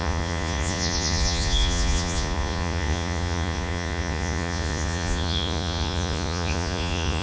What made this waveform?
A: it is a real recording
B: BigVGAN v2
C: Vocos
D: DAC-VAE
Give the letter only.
C